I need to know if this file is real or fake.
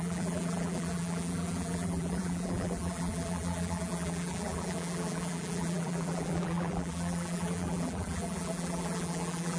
fake